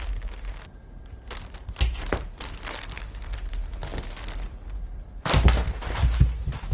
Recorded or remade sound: recorded